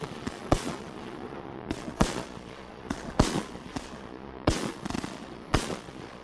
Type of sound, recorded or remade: remade